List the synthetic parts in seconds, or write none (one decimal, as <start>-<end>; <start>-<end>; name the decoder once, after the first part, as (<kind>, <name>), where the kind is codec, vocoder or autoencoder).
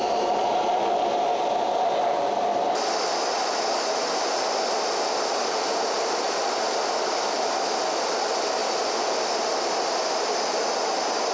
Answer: none